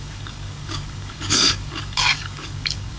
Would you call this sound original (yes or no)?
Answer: no